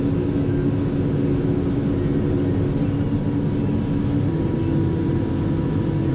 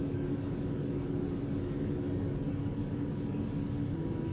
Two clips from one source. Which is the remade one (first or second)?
second